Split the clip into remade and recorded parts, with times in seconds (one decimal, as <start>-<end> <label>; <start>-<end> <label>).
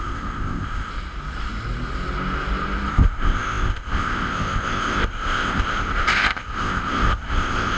0.0-0.9 remade; 0.9-2.9 recorded; 2.9-7.8 remade